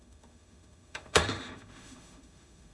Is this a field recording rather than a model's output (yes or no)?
no